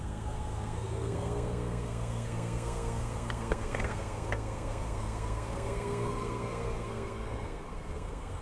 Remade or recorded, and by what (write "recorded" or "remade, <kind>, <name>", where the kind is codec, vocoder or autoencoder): remade, codec, SNAC